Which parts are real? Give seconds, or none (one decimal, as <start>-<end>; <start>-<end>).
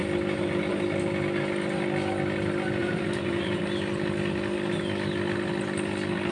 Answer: 0.0-2.8; 3.6-6.3